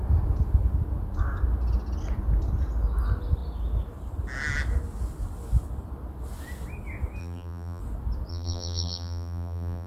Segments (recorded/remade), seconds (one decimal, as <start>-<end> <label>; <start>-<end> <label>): 0.0-7.2 recorded; 7.2-7.8 remade; 7.8-8.3 recorded; 8.3-9.9 remade